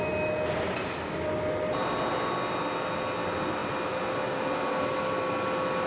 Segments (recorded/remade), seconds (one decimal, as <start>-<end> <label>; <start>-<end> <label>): 0.0-5.9 recorded